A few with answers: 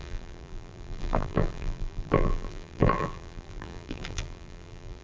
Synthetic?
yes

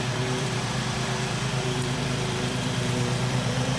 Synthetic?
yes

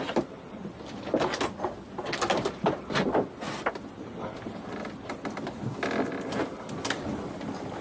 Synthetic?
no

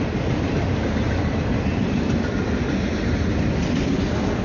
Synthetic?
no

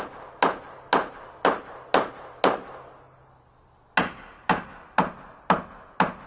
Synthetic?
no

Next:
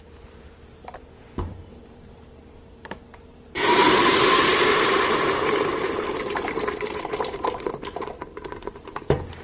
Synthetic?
yes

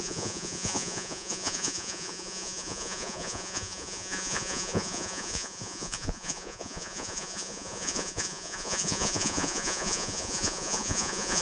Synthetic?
yes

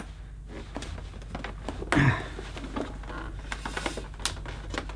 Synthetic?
no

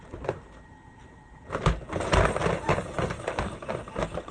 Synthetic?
no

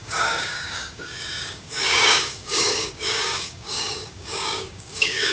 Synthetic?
yes